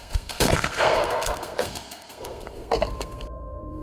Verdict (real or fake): fake